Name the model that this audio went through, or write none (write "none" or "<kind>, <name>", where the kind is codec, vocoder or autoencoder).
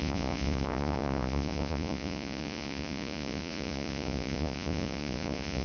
vocoder, Vocos